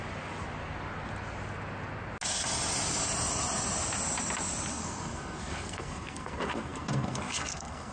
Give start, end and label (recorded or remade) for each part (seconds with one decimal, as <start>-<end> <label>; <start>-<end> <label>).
0.0-4.7 recorded; 4.7-7.9 remade